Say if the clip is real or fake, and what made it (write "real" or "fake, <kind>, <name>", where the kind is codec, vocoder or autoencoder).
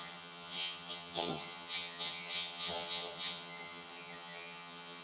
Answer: fake, vocoder, HiFi-GAN